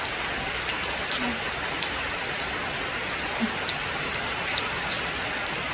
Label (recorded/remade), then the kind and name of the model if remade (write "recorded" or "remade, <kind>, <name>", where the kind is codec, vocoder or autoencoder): recorded